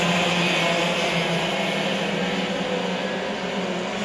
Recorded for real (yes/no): yes